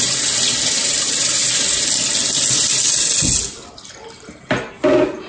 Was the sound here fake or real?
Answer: real